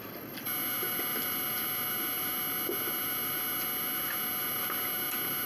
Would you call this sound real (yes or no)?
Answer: yes